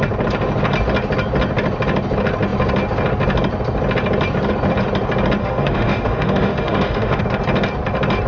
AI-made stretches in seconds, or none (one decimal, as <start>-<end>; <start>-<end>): 5.4-7.2